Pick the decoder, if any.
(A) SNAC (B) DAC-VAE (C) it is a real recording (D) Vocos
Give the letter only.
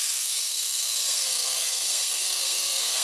A